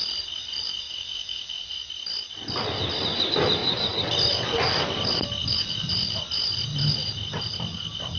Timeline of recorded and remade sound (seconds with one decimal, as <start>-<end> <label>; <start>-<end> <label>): 0.0-0.9 recorded; 0.9-1.6 remade; 1.6-8.2 recorded